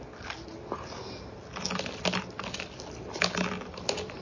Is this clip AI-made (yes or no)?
no